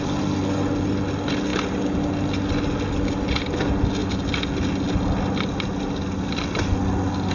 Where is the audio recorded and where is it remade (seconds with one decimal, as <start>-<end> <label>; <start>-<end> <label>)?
0.0-7.3 recorded